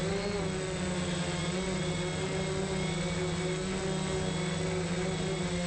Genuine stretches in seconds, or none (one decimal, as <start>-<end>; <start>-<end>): 0.0-5.7